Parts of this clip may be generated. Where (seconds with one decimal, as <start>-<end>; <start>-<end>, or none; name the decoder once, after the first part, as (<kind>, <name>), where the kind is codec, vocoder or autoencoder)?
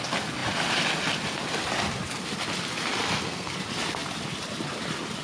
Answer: 3.0-3.5 (codec, SNAC)